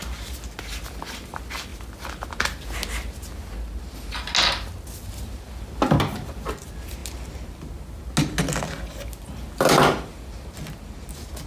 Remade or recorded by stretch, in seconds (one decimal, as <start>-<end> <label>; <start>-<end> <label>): 0.0-11.5 recorded